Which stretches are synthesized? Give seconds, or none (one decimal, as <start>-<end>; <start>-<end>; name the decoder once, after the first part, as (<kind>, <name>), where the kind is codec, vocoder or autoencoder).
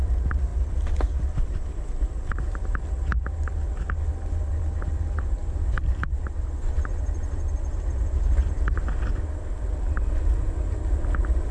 5.4-9.2 (vocoder, BigVGAN v2)